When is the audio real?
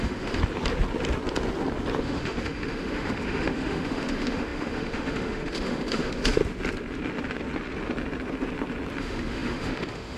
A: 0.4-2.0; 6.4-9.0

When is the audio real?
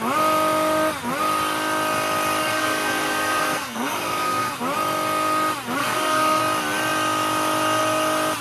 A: 0.0-2.4; 4.6-5.8; 6.4-8.4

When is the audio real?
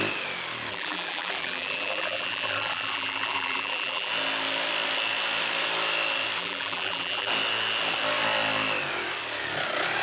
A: 0.0-0.7; 4.1-6.4; 7.3-10.0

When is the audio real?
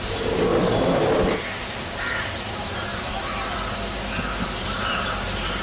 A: 0.5-1.6; 2.9-4.6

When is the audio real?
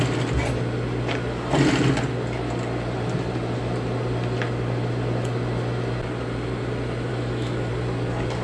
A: 0.0-7.1; 7.7-8.4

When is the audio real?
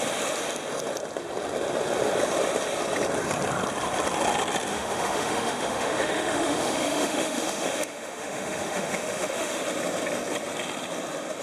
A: 0.0-4.7; 9.6-11.4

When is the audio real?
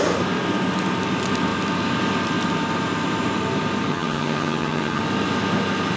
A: 0.0-3.9; 5.0-6.0